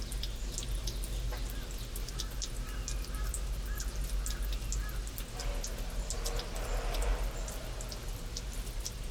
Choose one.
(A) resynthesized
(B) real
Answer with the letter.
B